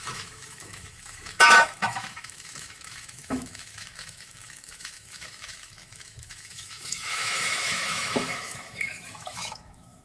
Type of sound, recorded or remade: remade